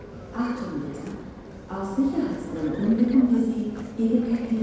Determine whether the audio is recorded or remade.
recorded